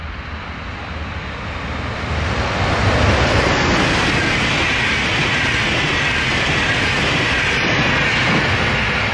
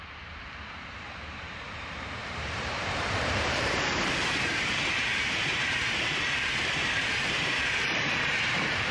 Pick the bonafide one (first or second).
first